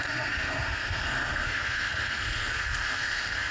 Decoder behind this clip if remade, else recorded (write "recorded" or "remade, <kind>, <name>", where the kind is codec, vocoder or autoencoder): remade, codec, SNAC